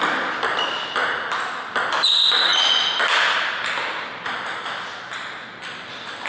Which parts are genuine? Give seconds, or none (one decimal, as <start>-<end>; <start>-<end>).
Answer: 0.0-6.3